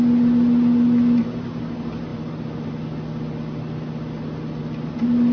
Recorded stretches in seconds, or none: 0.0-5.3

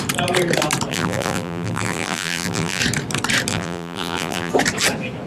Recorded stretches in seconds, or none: 0.0-0.9; 2.8-3.5; 4.5-5.3

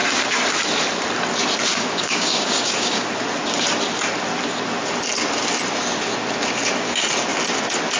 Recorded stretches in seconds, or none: 0.0-1.7; 3.1-8.0